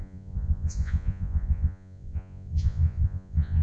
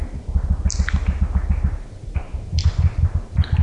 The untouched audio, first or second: second